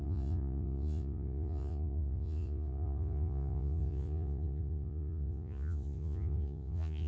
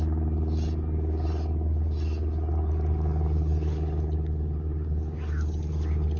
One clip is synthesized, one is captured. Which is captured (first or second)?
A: second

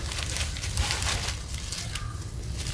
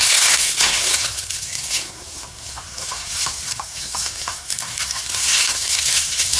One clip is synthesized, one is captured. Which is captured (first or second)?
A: first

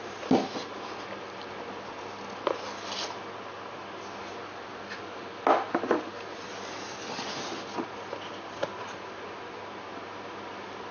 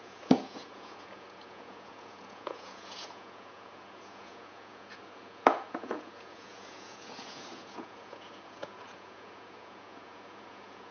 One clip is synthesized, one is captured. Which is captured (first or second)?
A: first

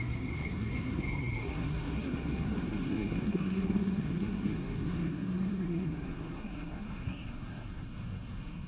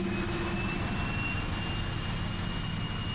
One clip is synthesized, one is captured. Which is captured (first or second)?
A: second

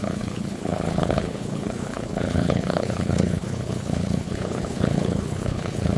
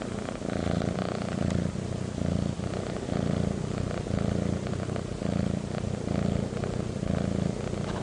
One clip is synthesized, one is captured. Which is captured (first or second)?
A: second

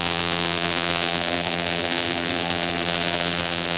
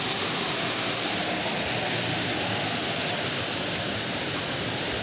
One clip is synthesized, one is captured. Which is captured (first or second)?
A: second